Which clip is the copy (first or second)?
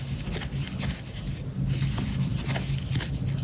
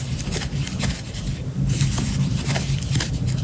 second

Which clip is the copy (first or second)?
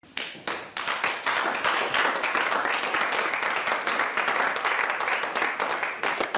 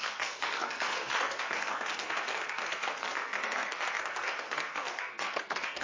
second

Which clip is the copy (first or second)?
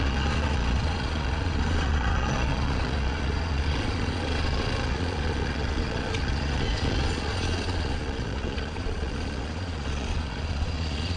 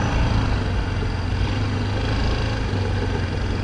first